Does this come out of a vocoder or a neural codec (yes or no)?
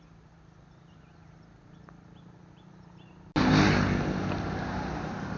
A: no